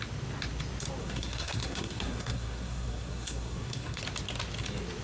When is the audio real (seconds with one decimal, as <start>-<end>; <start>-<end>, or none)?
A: 0.0-1.0; 4.0-5.0